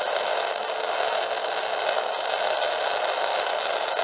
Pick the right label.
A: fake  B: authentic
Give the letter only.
B